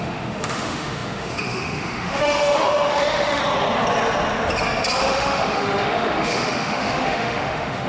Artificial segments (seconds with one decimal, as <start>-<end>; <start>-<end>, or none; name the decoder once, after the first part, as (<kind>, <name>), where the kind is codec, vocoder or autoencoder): 0.0-3.4 (autoencoder, DAC-VAE); 5.0-7.9